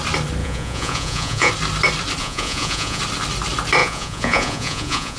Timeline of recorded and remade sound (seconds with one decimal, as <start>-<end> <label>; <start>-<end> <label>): 0.0-0.4 recorded; 0.4-1.5 remade; 1.5-2.2 recorded; 2.2-3.0 remade; 3.0-3.8 recorded; 3.8-5.2 remade